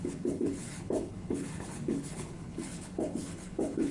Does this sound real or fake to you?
fake